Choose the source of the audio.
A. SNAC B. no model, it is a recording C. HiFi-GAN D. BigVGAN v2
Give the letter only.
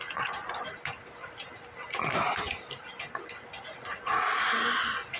B